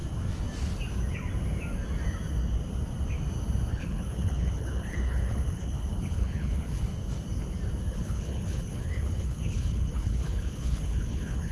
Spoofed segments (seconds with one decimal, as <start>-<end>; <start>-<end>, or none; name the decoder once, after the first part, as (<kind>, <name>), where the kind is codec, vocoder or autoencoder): 3.7-6.9 (codec, HILCodec); 7.9-11.5